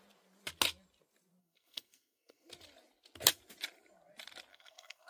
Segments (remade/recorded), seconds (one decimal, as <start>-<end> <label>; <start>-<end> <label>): 0.0-1.4 recorded; 1.4-2.5 remade; 2.5-4.5 recorded; 4.5-5.1 remade